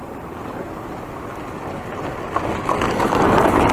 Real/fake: real